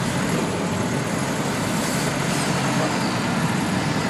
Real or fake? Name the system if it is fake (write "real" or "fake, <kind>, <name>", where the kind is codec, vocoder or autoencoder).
real